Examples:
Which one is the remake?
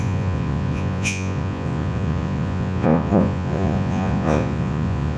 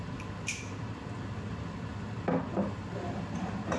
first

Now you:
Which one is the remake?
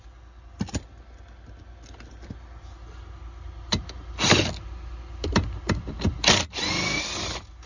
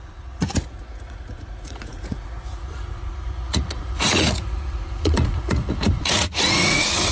second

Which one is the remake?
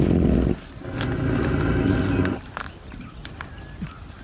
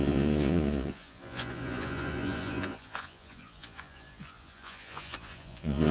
second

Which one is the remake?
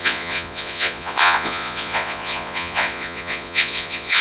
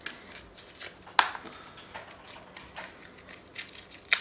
first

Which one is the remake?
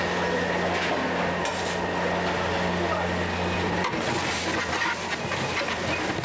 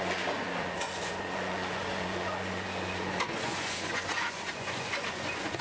second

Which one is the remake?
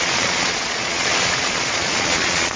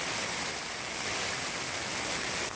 first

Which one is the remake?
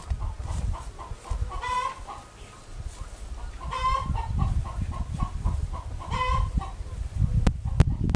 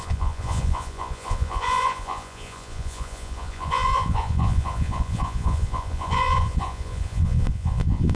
second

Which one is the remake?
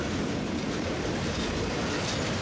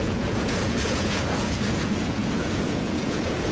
second